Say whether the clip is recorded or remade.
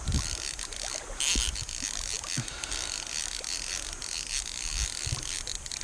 recorded